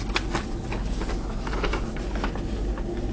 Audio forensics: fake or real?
real